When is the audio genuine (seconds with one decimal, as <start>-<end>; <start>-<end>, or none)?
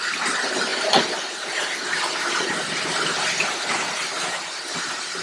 0.0-5.2